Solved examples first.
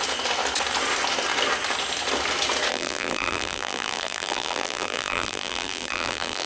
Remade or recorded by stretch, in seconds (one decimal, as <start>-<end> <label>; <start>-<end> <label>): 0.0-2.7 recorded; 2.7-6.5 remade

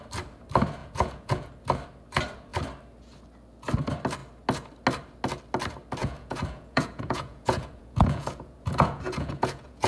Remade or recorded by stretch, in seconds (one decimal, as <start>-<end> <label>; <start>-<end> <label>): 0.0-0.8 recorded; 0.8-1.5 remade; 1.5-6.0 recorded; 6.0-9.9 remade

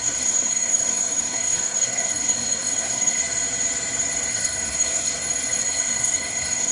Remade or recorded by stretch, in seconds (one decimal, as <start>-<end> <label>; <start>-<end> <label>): 0.0-3.2 remade; 3.2-4.3 recorded; 4.3-5.1 remade; 5.1-5.6 recorded; 5.6-6.7 remade

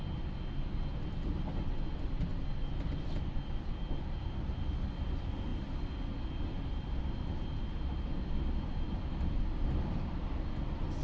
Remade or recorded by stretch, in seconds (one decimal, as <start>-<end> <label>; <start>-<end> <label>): 0.0-11.0 recorded

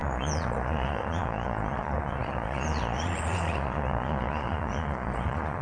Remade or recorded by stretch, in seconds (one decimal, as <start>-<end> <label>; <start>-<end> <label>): 0.0-5.6 remade